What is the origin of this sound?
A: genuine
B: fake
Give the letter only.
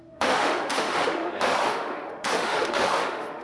B